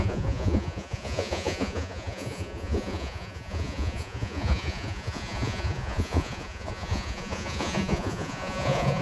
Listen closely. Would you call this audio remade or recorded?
remade